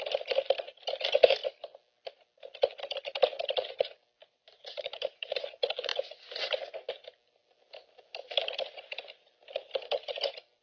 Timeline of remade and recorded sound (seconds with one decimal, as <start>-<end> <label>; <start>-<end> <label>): 0.0-4.2 recorded; 4.2-5.5 remade; 5.5-10.6 recorded